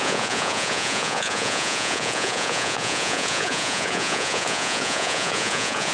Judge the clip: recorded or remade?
remade